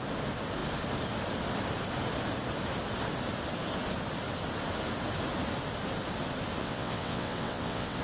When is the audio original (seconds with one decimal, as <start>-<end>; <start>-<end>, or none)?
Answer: 0.0-6.6